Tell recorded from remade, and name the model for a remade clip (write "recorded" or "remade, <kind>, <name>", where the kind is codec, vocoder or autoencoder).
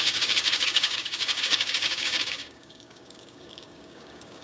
remade, codec, DAC